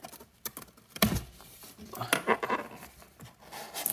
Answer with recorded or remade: recorded